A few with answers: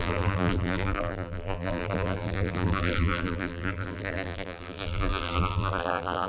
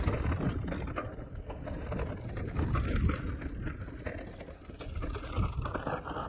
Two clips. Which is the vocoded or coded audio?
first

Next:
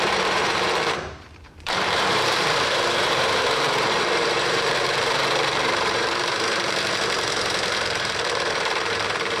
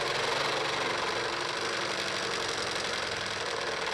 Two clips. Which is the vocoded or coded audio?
first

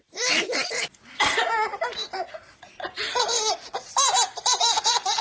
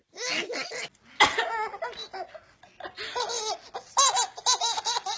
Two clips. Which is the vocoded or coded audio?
first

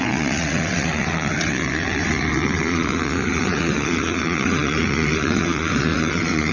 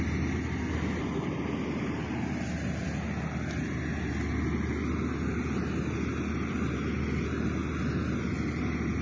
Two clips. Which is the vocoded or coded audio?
first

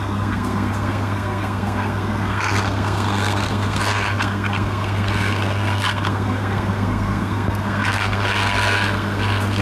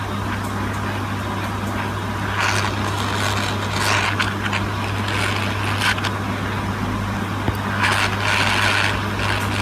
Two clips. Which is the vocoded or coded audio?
first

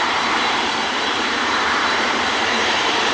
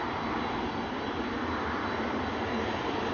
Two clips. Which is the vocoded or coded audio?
first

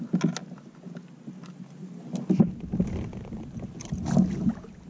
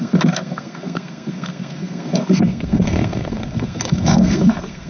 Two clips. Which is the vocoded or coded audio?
second